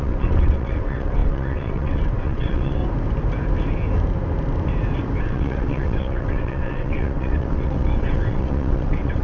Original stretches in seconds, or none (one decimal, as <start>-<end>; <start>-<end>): 2.8-5.2

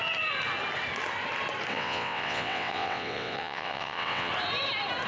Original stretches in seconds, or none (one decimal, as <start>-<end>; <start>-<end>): 0.0-1.7; 4.3-5.1